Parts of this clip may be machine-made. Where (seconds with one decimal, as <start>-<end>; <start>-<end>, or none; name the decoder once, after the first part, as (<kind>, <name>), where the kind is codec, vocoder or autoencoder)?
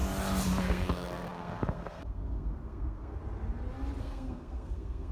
0.6-3.2 (codec, SNAC); 4.0-5.1